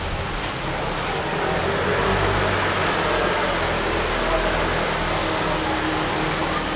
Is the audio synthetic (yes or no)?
no